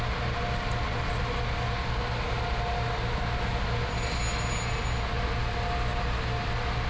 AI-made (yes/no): no